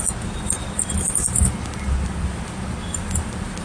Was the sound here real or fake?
real